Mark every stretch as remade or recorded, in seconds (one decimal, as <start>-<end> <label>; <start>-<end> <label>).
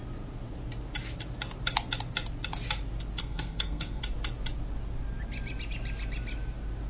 0.0-3.2 recorded; 3.2-4.0 remade; 4.0-6.9 recorded